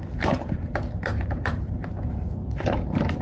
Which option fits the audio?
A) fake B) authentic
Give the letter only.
A